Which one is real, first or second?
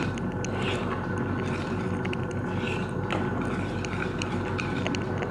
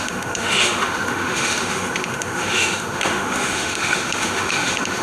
first